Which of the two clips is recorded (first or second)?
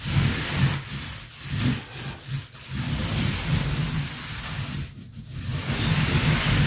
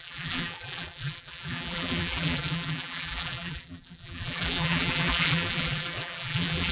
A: first